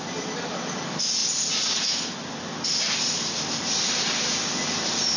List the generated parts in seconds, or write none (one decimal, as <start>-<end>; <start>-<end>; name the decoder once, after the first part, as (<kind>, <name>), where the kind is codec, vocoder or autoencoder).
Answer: none